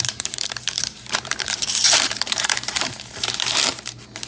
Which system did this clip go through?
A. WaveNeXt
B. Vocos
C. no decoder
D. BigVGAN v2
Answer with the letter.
D